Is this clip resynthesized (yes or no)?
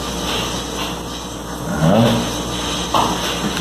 no